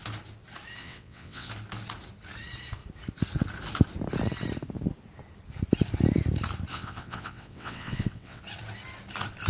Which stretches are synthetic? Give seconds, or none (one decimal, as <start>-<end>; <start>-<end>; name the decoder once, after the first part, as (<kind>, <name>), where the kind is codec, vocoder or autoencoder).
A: 0.8-1.5 (vocoder, WaveNeXt); 6.7-8.4